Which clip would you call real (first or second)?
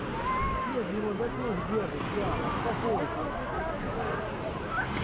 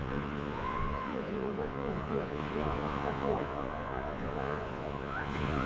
first